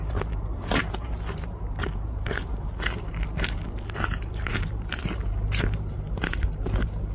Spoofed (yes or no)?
yes